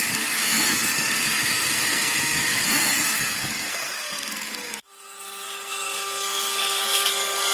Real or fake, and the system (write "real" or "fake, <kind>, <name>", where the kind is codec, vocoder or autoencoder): fake, codec, SNAC